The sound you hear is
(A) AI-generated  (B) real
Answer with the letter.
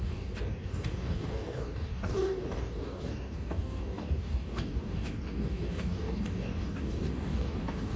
A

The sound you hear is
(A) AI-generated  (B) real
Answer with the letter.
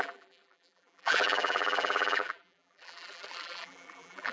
A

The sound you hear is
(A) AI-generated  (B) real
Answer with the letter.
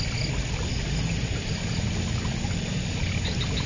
B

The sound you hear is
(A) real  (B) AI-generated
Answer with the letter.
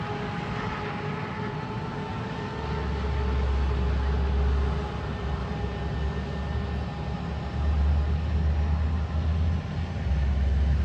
A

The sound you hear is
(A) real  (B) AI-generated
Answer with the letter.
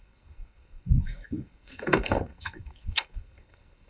B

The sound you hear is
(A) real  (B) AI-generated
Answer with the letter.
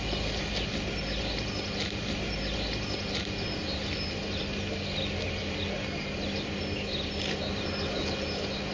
A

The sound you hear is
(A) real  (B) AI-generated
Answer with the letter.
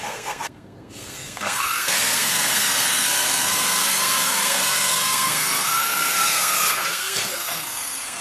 B